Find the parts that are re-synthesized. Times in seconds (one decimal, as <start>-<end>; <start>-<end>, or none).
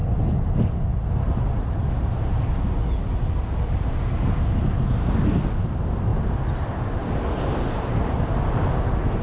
none